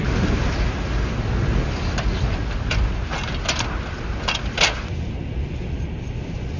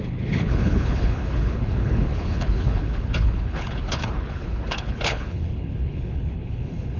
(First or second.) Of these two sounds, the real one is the first